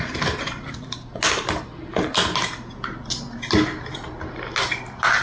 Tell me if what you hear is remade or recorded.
recorded